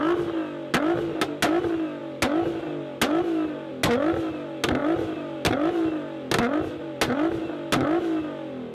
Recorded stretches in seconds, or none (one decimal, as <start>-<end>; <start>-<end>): 0.0-8.7